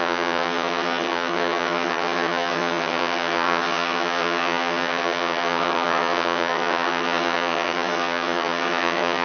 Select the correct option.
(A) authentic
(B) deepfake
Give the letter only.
B